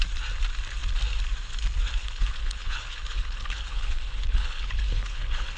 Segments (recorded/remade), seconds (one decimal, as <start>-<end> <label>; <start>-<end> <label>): 0.0-2.0 recorded; 2.0-5.6 remade